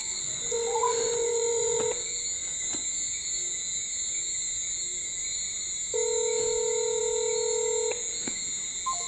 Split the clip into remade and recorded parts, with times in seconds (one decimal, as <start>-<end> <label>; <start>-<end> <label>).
0.0-1.8 remade; 1.8-9.1 recorded